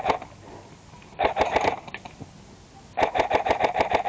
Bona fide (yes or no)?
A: yes